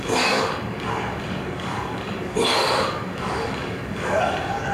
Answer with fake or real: fake